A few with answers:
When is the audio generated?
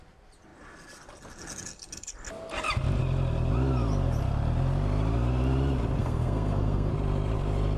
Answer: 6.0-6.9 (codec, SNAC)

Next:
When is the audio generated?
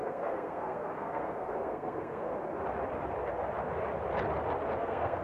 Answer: 0.0-2.3 (codec, SNAC); 4.8-5.2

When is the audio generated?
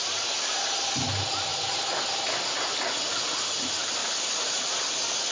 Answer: none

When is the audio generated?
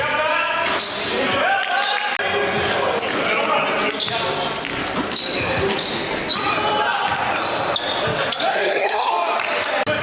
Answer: 8.5-9.1 (codec, SNAC)